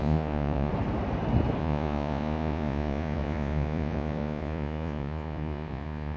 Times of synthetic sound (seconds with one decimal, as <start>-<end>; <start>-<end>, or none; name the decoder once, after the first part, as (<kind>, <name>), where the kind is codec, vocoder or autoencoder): 0.0-0.7 (vocoder, Vocos); 1.6-6.2